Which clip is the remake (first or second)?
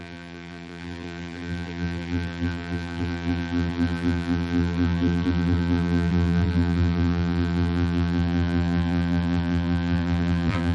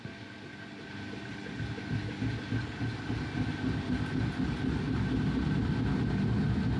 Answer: first